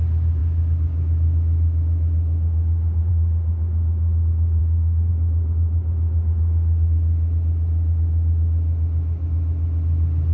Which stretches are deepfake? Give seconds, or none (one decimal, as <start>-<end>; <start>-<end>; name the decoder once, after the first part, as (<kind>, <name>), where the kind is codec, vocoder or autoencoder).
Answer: 4.6-5.1 (autoencoder, DAC-VAE)